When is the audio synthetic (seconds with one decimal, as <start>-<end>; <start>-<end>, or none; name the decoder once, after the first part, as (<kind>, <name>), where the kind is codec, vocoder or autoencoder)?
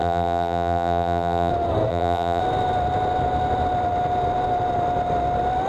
0.0-1.5 (vocoder, BigVGAN v2); 1.9-2.4